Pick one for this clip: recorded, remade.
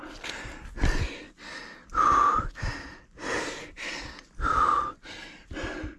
recorded